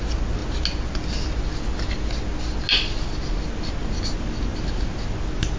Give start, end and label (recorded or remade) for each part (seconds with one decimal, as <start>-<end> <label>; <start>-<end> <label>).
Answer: 0.0-5.6 recorded